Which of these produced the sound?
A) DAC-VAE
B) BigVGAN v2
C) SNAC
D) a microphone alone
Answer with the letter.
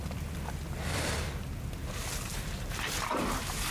D